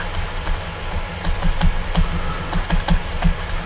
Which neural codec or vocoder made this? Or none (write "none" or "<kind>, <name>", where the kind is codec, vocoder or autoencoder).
none